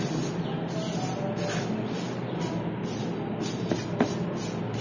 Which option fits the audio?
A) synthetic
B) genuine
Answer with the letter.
B